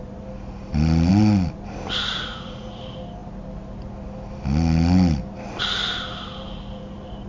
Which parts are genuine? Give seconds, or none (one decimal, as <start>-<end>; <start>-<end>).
0.0-2.1; 2.8-7.3